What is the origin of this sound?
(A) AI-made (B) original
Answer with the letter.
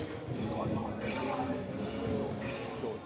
B